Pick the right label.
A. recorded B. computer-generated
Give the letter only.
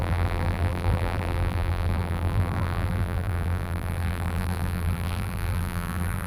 B